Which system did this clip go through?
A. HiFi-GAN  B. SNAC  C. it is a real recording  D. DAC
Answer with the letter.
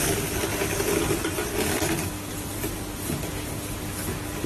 C